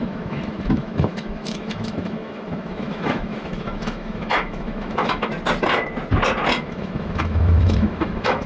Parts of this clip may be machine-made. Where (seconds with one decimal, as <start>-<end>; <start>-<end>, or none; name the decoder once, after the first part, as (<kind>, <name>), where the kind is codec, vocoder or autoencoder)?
0.0-5.3 (autoencoder, DAC-VAE); 6.6-8.5